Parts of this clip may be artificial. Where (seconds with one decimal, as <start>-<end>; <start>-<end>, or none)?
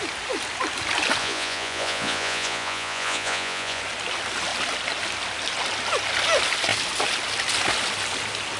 1.2-3.8